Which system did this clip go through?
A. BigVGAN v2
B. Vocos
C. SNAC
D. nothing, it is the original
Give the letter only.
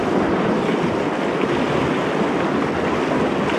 D